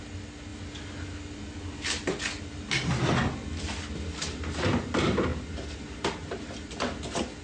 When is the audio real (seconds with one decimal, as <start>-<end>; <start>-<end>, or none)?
0.0-5.3; 6.7-7.4